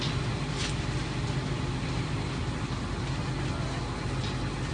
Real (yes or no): yes